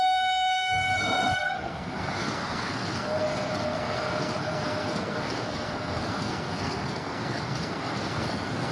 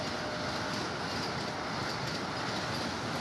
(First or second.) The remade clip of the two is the first